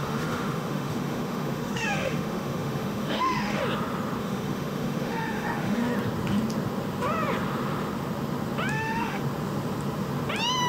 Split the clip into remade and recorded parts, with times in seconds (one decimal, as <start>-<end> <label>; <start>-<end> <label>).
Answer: 0.0-3.6 remade; 3.6-4.2 recorded; 4.2-5.8 remade; 5.8-8.7 recorded; 8.7-9.2 remade; 9.2-10.7 recorded